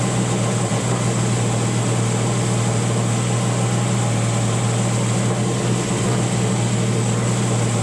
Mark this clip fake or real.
real